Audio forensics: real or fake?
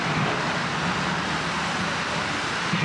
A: real